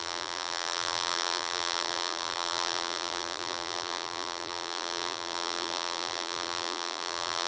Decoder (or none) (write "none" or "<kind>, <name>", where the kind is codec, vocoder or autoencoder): vocoder, BigVGAN v2